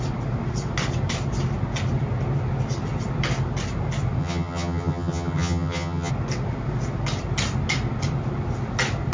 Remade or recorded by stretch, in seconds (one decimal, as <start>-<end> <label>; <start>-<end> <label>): 0.0-4.2 recorded; 4.2-6.1 remade; 6.1-9.1 recorded